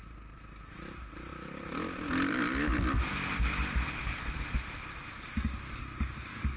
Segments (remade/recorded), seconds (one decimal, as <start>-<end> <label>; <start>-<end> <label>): 0.0-5.0 recorded; 5.0-6.6 remade